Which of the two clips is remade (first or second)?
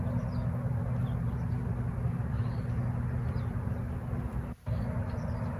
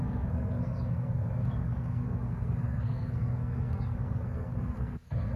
second